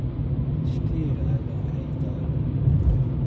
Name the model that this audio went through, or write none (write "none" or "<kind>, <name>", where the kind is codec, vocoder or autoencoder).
none